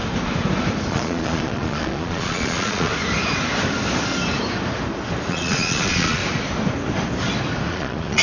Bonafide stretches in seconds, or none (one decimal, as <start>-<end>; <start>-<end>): 0.0-0.9; 2.9-5.3; 6.2-7.7